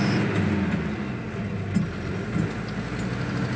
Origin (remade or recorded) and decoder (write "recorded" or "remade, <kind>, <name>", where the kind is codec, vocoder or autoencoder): recorded